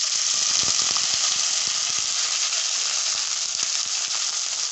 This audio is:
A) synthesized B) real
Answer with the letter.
B